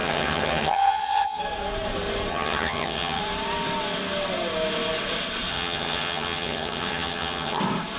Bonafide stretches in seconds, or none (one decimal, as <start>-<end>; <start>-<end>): 1.4-2.3; 3.2-5.5; 7.6-8.0